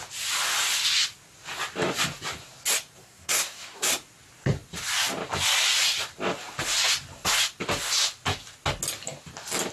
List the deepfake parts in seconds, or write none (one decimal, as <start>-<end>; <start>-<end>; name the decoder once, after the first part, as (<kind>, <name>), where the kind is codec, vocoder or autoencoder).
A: 3.0-3.9 (codec, SNAC)